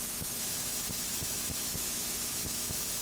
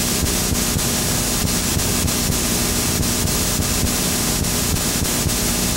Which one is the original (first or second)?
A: second